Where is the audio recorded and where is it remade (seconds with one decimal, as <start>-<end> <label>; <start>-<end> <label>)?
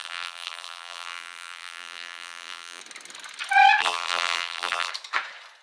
0.0-2.8 remade; 2.8-3.8 recorded; 3.8-4.9 remade; 4.9-5.6 recorded